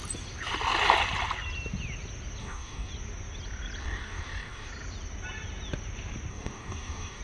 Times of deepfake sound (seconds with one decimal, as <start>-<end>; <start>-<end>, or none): 2.4-2.9; 3.8-4.7; 6.3-7.2